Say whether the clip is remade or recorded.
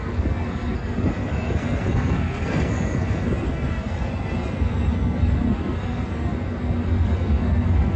remade